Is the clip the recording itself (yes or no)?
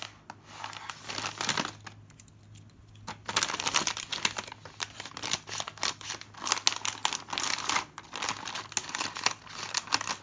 yes